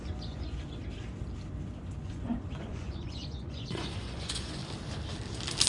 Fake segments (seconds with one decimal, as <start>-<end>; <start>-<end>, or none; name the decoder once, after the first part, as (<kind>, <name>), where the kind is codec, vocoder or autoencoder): 0.0-0.8 (vocoder, Vocos); 2.0-4.6